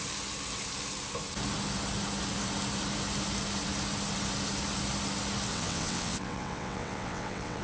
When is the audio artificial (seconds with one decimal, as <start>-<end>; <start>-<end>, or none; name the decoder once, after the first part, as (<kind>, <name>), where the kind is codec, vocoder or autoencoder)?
5.5-7.6 (vocoder, WaveNeXt)